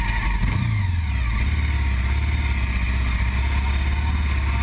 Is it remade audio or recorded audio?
recorded